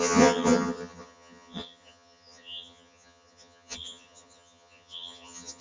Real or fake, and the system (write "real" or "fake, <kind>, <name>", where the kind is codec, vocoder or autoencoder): fake, vocoder, HiFi-GAN